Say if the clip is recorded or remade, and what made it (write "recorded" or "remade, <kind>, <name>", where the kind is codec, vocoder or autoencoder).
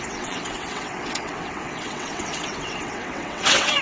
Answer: remade, vocoder, WaveNeXt